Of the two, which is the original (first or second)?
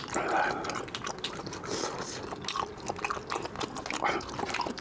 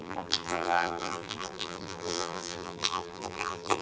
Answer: first